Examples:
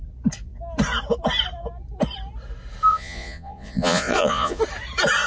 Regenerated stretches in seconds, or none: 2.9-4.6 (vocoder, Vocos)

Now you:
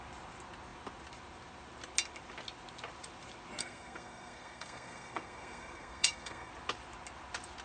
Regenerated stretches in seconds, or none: 3.6-6.5 (codec, SNAC)

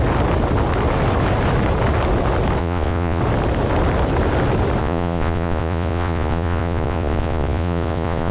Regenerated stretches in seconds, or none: 2.6-3.2 (vocoder, Vocos); 4.8-8.3

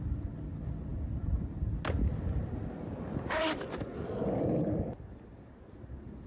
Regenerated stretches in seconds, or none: none

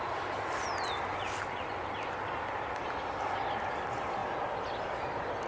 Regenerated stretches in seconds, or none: none